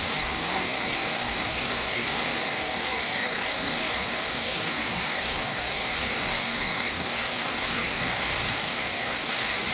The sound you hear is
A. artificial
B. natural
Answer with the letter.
A